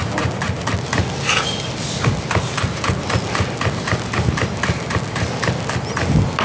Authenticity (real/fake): real